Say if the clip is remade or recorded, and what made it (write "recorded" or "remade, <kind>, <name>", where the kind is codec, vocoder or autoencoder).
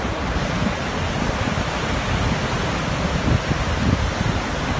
recorded